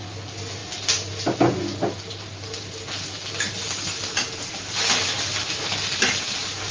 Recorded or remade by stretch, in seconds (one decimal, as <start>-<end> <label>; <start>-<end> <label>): 0.0-6.7 recorded